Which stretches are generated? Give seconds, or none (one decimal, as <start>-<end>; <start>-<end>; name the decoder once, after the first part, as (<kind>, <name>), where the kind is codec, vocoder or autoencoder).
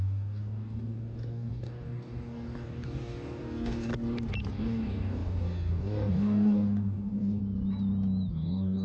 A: 0.0-3.9 (codec, DAC); 4.5-7.4; 8.3-8.8